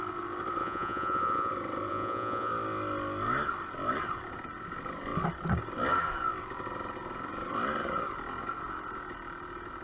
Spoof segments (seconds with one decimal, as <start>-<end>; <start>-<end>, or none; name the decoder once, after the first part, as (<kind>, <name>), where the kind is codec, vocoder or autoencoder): 0.6-1.5 (vocoder, Vocos); 1.9-2.5